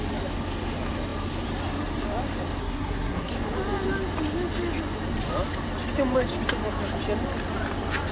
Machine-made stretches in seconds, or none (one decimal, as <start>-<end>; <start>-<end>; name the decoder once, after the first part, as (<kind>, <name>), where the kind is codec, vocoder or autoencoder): 2.6-3.3 (codec, SNAC)